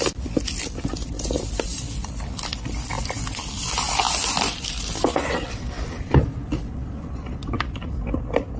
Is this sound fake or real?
fake